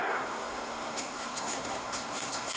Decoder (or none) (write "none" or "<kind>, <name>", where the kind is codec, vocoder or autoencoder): codec, SNAC